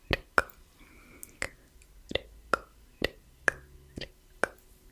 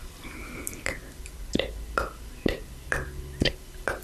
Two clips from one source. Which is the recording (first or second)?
first